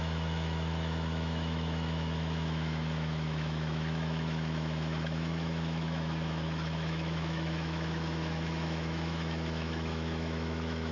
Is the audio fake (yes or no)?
yes